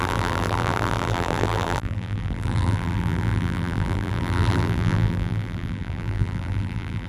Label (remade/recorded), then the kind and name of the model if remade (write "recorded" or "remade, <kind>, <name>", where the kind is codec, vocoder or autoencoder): remade, vocoder, BigVGAN v2